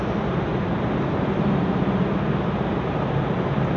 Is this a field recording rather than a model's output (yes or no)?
yes